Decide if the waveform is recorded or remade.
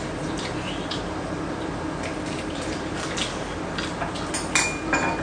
recorded